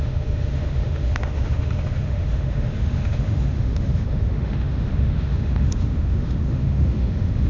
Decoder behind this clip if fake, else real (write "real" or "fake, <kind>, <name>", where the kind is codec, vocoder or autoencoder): fake, autoencoder, DAC-VAE